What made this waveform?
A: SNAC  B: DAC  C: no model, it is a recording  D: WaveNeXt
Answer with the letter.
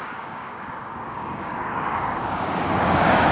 B